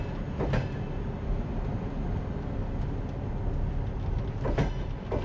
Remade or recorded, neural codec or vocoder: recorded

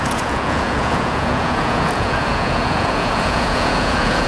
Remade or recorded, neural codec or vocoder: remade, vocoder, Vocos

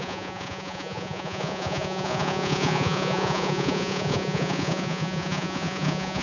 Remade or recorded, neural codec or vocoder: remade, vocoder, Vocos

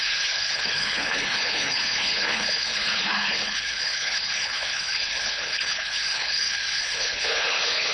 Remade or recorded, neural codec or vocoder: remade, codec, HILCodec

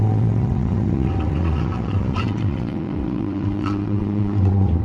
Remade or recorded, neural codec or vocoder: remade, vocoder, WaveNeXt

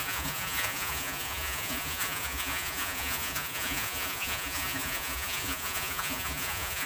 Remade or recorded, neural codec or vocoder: remade, vocoder, Vocos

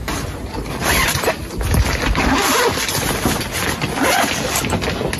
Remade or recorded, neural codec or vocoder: recorded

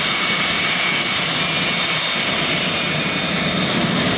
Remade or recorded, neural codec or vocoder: recorded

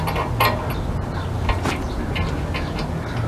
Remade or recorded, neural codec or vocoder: recorded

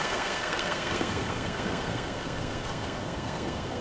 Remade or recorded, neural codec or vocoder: remade, codec, SNAC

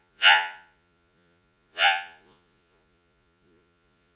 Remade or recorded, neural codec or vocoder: remade, vocoder, Vocos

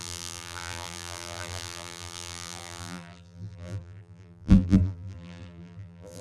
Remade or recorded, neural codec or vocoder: remade, vocoder, BigVGAN v2